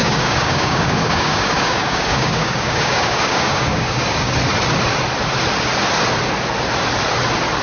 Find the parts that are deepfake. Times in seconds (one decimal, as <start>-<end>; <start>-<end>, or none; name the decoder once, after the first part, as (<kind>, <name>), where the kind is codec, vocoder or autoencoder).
0.0-4.3 (codec, DAC)